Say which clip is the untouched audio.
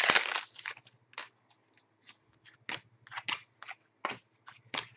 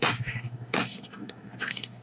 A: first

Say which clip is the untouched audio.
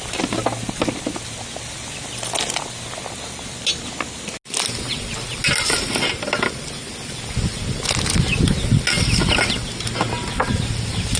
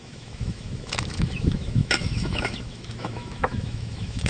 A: first